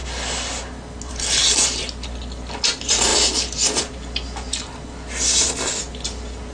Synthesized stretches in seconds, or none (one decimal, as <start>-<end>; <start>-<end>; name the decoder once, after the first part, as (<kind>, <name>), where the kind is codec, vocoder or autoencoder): none